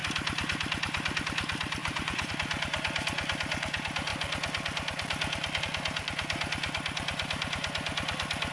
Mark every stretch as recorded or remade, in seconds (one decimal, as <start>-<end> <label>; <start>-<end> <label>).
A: 0.0-1.8 recorded; 1.8-2.3 remade; 2.3-8.5 recorded